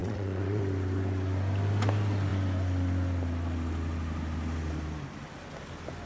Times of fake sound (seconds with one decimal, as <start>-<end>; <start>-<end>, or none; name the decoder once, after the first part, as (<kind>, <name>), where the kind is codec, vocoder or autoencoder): 0.0-0.6 (vocoder, Vocos)